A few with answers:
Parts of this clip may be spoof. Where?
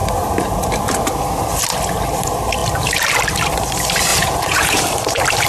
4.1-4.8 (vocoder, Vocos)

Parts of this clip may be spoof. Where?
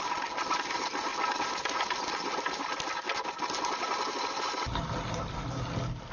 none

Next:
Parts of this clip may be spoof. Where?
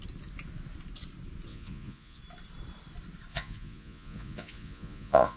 1.5-2.2 (vocoder, Vocos); 3.3-5.4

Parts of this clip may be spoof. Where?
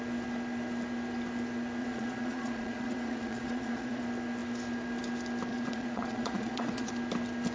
1.8-4.0 (vocoder, Vocos); 5.5-6.9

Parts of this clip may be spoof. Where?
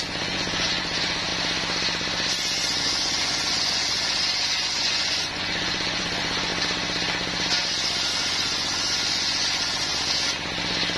0.0-1.3 (vocoder, Vocos); 2.8-6.5; 8.1-9.9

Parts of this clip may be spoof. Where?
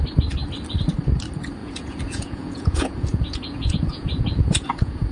1.6-5.1 (vocoder, Vocos)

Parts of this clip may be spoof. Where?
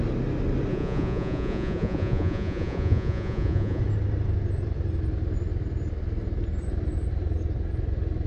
0.7-3.8 (vocoder, Vocos)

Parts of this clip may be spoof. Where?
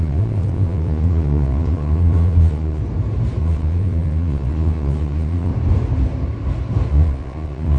0.0-2.8 (vocoder, Vocos); 3.4-5.5; 6.9-7.8